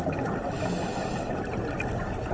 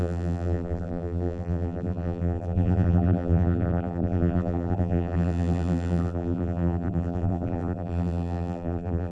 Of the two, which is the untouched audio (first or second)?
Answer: first